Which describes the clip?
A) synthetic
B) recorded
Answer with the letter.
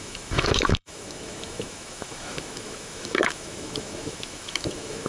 A